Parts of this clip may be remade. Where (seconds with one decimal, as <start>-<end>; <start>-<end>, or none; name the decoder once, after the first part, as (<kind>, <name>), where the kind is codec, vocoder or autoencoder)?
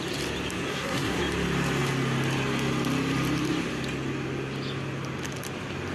0.7-1.2 (codec, SNAC)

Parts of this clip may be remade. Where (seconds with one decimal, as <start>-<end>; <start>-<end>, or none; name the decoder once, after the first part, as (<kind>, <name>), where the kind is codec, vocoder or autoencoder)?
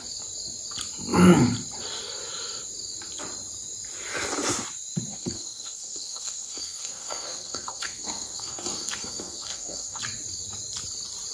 5.1-10.0 (codec, SNAC)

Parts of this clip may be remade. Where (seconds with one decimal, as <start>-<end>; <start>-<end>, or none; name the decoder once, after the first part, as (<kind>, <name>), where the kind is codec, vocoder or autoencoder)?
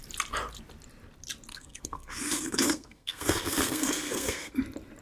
1.5-4.5 (codec, SNAC)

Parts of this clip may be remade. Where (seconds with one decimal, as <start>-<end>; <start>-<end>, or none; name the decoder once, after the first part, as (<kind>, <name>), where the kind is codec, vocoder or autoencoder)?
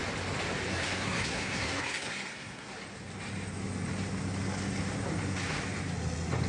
0.7-2.7 (codec, SNAC)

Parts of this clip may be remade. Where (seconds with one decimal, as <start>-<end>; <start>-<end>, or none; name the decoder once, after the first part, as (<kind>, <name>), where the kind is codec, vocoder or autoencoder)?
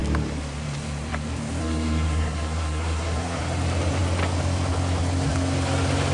1.6-3.4 (codec, SNAC)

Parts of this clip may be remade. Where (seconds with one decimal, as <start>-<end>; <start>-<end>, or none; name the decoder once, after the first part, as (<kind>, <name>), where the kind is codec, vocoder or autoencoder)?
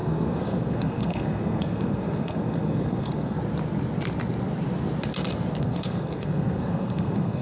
0.0-3.4 (codec, SNAC); 5.6-7.4